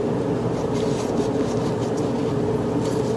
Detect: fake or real real